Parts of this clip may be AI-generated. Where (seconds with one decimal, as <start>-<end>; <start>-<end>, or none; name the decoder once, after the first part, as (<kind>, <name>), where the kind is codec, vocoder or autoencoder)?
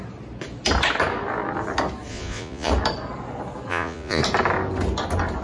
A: 2.1-2.7 (vocoder, Vocos); 3.7-4.2